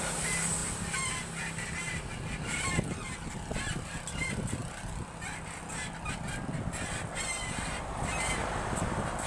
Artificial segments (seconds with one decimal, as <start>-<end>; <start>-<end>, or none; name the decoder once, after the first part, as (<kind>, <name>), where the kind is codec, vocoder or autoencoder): none